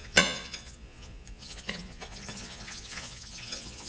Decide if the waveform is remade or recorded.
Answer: remade